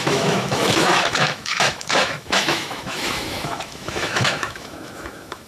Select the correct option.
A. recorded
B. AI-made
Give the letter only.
B